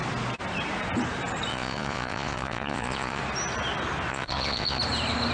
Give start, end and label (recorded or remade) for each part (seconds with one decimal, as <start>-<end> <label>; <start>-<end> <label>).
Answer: 0.0-1.5 recorded; 1.5-3.2 remade; 3.2-4.1 recorded; 4.1-4.8 remade; 4.8-5.3 recorded